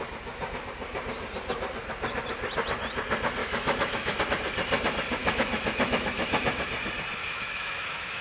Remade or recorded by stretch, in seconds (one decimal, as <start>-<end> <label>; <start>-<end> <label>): 0.0-3.4 recorded; 3.4-4.2 remade; 4.2-5.2 recorded; 5.2-6.7 remade; 6.7-7.2 recorded; 7.2-8.2 remade